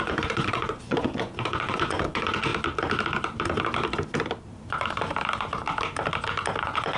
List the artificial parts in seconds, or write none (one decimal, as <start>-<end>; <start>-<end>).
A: 0.0-2.5; 6.6-7.0